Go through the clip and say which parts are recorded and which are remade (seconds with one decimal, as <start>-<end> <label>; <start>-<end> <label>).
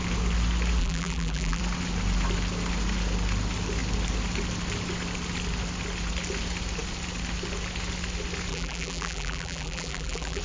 0.0-0.8 recorded; 0.8-1.6 remade; 1.6-8.5 recorded; 8.5-10.4 remade